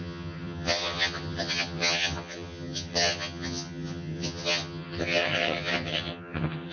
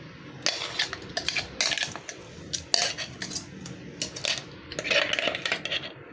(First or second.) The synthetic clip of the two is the first